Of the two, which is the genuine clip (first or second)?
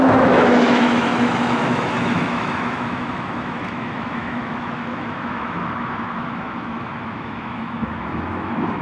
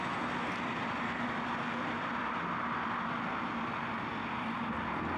second